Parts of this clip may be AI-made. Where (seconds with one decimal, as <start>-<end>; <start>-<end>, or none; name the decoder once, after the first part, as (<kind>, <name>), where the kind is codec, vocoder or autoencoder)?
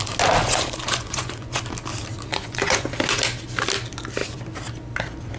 0.4-1.6 (vocoder, Vocos); 2.3-2.9